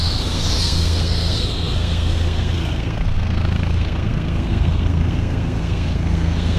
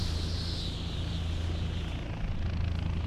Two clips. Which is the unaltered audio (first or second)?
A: second